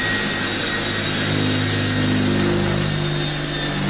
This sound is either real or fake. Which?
real